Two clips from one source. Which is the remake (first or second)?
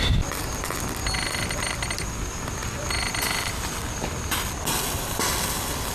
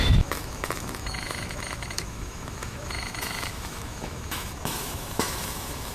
second